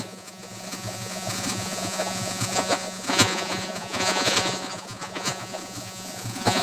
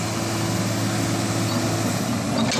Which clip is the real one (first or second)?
second